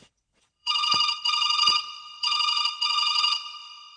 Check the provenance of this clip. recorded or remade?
remade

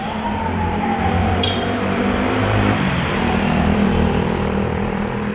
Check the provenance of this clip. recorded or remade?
remade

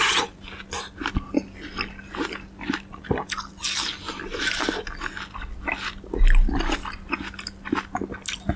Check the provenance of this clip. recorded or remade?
recorded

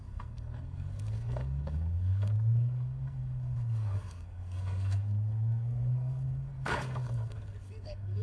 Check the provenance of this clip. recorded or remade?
remade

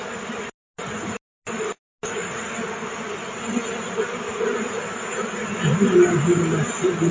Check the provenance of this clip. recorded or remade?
recorded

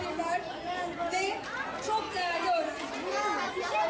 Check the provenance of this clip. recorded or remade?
recorded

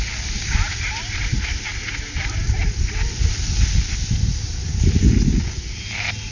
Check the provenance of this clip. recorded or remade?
recorded